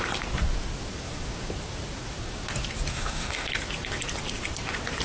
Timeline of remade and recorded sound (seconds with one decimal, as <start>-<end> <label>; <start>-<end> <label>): 0.0-2.9 recorded; 2.9-3.5 remade; 3.5-5.0 recorded